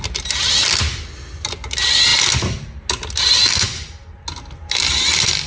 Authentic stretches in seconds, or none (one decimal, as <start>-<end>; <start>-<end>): 0.0-5.5